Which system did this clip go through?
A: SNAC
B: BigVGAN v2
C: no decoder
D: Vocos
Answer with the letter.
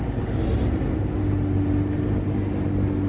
C